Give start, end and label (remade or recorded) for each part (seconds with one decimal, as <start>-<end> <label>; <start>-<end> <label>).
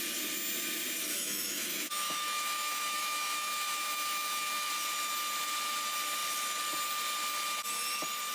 0.0-1.1 recorded; 1.1-4.7 remade; 4.7-8.3 recorded